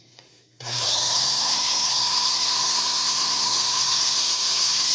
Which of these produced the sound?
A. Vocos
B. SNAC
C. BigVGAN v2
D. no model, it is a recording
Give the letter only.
B